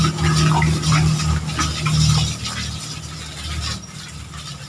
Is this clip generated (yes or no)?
no